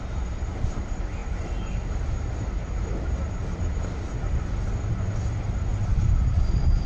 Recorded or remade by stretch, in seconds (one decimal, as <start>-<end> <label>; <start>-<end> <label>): 0.0-6.9 recorded